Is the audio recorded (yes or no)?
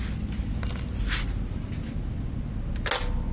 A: yes